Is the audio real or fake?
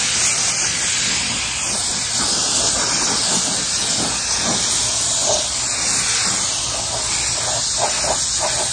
real